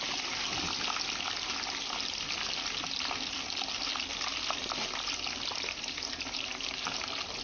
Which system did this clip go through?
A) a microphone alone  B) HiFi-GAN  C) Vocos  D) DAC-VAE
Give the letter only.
A